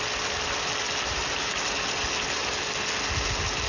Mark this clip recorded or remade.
recorded